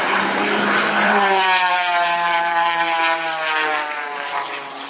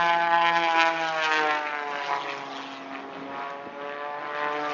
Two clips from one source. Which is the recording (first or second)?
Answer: second